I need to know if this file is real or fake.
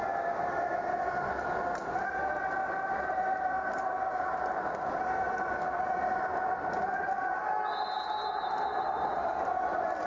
real